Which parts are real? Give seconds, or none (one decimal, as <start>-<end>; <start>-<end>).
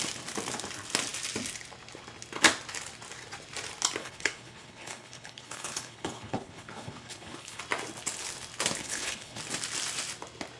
0.0-4.0; 7.6-8.8; 9.4-10.6